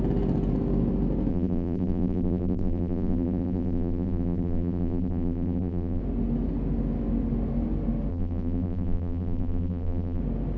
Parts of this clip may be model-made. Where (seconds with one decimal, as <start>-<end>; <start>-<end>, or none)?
1.3-6.0; 8.1-10.2